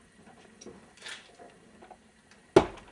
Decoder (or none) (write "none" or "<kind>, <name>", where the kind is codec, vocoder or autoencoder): none